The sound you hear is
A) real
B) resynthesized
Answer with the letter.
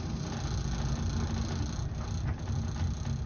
A